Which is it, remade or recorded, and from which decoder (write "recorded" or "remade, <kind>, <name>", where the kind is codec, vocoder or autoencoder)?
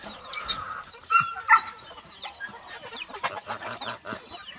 remade, vocoder, BigVGAN v2